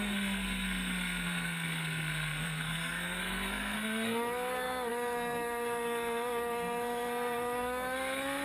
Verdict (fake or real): fake